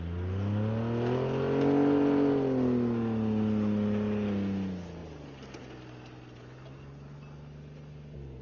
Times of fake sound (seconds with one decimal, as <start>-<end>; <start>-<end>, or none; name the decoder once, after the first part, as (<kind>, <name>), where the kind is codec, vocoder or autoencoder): none